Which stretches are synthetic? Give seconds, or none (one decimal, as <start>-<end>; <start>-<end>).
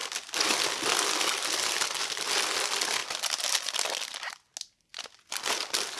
none